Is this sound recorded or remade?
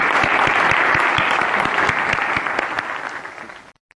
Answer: recorded